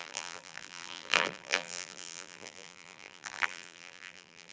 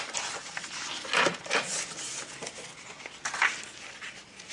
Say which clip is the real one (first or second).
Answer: second